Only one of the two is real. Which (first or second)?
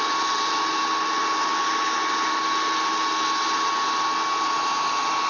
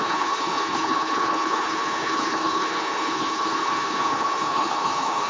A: first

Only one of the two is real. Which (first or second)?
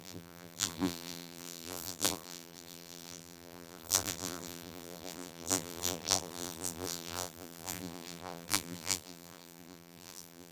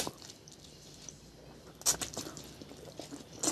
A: second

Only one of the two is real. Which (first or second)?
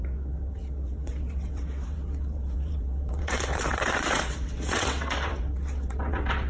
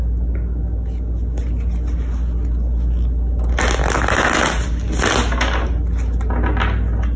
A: second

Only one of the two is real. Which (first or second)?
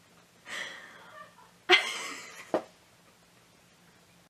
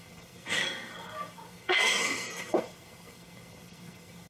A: first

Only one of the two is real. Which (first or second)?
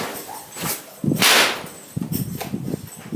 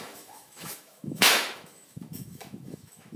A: first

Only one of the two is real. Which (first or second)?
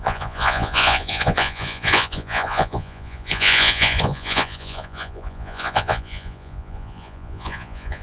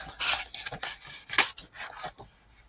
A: second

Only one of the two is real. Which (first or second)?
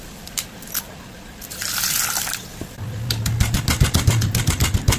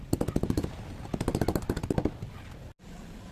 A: second